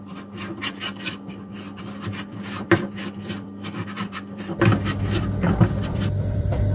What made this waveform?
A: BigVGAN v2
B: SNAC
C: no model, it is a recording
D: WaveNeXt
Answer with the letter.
A